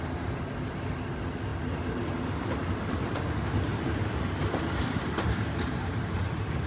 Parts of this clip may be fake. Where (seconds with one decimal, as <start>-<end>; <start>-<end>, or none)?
3.7-6.7